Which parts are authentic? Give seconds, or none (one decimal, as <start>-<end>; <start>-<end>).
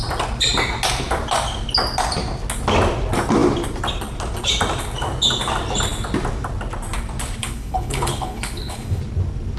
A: 0.0-7.4; 9.0-9.6